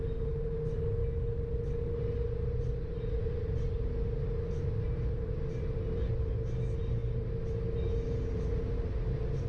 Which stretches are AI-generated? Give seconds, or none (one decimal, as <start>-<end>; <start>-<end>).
none